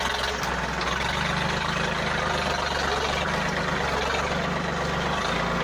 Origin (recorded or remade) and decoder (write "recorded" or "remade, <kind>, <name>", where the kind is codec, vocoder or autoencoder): recorded